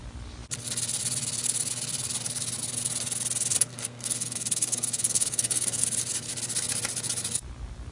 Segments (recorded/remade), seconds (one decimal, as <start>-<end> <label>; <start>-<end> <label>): 0.0-3.7 recorded; 3.7-5.8 remade; 5.8-7.9 recorded